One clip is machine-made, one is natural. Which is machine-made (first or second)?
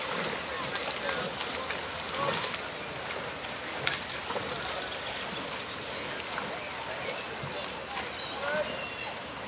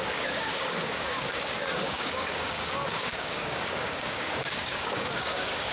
second